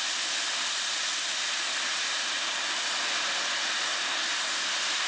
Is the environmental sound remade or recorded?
recorded